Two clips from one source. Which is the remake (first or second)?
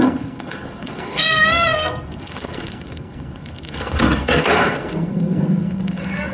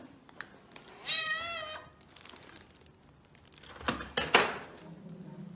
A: first